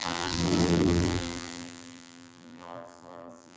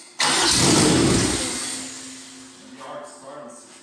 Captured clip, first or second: second